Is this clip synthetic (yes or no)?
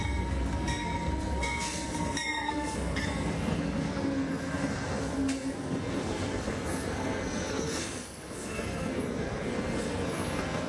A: yes